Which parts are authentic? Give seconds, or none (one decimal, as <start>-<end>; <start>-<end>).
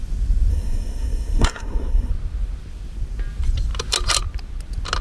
0.0-0.5; 2.1-5.0